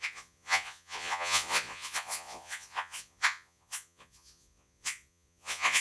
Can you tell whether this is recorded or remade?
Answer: remade